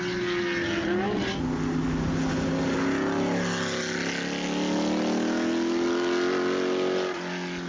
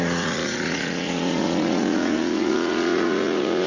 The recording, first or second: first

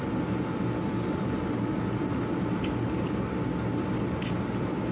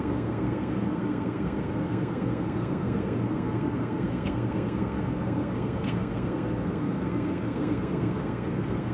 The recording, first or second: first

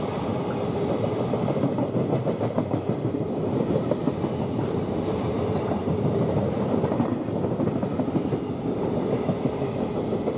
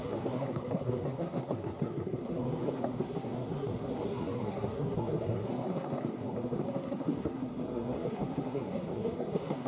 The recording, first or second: first